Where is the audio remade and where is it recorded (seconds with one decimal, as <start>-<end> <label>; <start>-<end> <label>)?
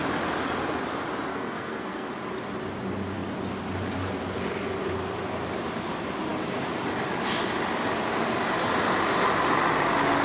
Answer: 0.0-1.3 recorded; 1.3-2.1 remade; 2.1-10.2 recorded